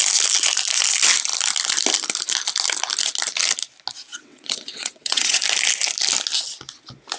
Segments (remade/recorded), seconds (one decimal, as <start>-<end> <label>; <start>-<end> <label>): 0.0-4.1 recorded; 4.1-5.4 remade; 5.4-7.2 recorded